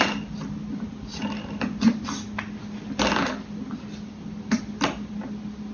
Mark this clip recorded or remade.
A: recorded